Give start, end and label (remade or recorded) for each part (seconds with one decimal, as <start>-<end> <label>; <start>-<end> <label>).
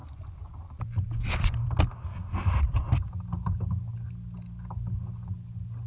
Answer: 0.0-0.5 remade; 0.5-5.9 recorded